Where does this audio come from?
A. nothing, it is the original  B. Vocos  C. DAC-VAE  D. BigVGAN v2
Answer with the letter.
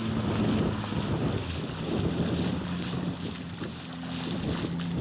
A